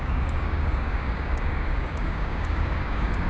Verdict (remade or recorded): remade